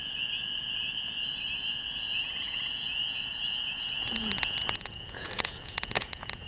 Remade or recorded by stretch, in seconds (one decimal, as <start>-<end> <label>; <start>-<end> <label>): 0.0-6.5 remade